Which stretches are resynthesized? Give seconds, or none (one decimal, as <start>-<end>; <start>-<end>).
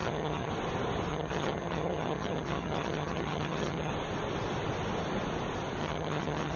0.0-0.5; 1.1-3.9; 5.8-6.6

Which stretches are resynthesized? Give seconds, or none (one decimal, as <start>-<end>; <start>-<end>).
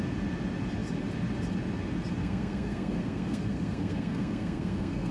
2.2-5.1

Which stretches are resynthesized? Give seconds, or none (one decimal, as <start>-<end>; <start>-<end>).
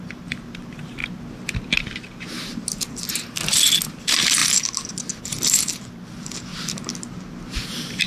0.0-1.0; 4.0-4.4; 5.2-6.5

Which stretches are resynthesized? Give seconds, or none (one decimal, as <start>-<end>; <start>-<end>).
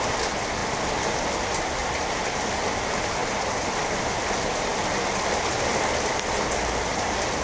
1.8-2.6; 3.2-4.0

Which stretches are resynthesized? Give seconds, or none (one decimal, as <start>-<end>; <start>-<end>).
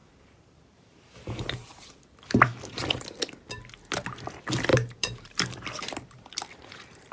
0.0-2.0; 4.7-5.8